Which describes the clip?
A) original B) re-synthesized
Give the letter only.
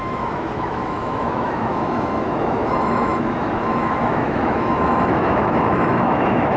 B